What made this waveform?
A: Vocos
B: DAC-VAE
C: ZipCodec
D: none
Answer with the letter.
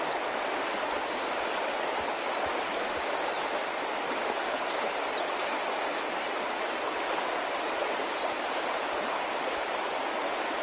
D